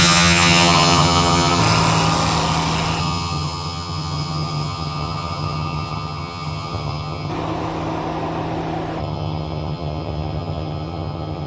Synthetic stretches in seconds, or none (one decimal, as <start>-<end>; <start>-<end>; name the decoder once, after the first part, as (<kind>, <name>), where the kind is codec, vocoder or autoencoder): 0.0-1.6 (vocoder, HiFi-GAN); 3.0-7.3; 9.0-11.5

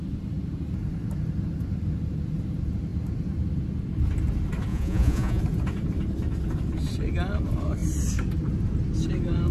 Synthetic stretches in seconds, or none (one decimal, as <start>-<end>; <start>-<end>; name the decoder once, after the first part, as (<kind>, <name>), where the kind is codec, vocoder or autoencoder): 4.7-5.4 (vocoder, Vocos)